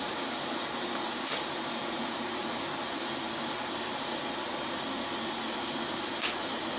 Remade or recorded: recorded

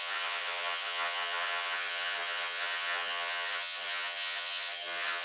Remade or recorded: remade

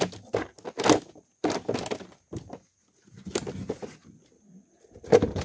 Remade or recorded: recorded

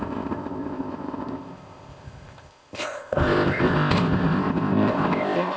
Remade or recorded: remade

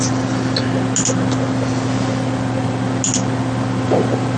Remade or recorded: recorded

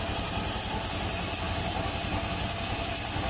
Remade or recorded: recorded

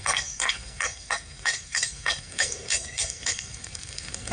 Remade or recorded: remade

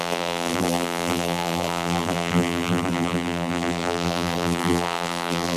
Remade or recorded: remade